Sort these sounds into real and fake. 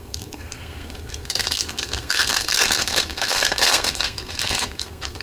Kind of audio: fake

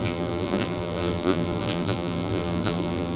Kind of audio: fake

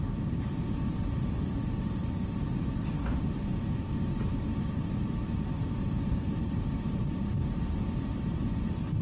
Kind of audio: fake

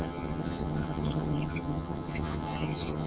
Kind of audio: fake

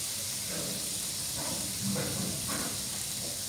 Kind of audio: real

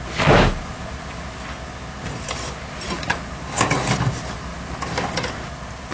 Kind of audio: real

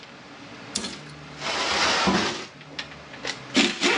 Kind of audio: real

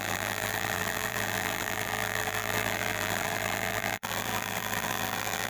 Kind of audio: fake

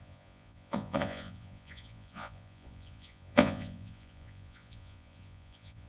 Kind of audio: fake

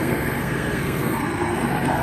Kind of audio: fake